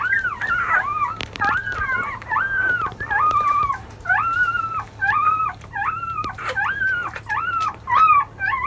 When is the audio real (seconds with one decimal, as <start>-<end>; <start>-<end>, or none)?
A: 0.0-1.6; 4.6-5.0